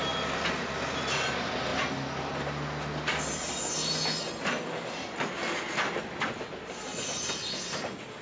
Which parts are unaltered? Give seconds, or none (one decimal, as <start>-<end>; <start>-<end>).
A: 0.0-8.2